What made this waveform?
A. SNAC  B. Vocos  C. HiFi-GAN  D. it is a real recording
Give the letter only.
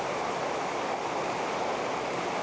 D